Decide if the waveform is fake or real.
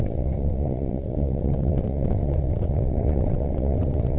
fake